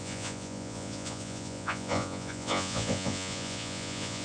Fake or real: fake